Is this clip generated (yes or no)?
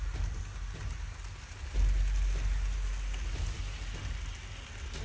no